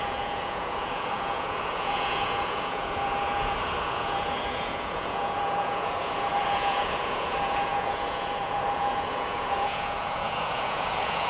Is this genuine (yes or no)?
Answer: no